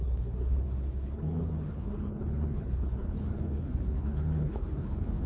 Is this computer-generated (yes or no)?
yes